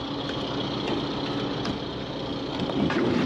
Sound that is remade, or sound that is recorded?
recorded